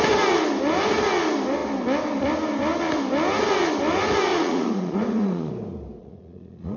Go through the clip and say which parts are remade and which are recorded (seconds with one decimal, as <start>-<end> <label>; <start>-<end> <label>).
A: 0.0-4.3 recorded; 4.3-5.5 remade; 5.5-6.0 recorded; 6.0-6.8 remade